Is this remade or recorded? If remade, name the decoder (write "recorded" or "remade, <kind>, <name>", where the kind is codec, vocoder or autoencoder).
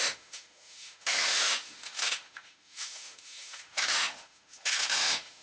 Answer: remade, autoencoder, DAC-VAE